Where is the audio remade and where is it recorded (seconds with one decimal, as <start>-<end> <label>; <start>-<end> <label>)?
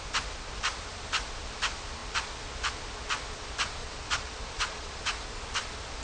0.0-3.8 recorded; 3.8-5.0 remade; 5.0-6.0 recorded